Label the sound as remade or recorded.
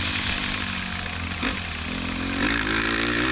recorded